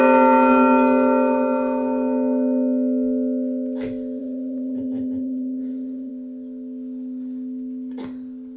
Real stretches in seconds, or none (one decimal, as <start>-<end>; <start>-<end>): 0.0-4.2; 6.1-8.6